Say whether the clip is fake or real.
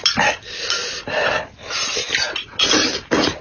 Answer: real